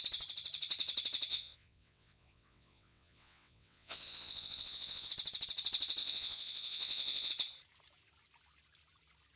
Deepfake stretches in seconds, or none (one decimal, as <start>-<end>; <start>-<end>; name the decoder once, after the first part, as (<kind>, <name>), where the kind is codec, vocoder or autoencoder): 1.3-5.1 (vocoder, WaveNeXt); 6.0-7.3